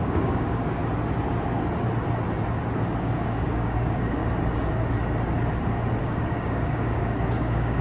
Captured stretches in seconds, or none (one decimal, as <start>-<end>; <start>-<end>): 0.8-3.0; 4.2-6.0